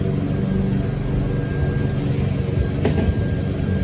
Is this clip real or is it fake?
real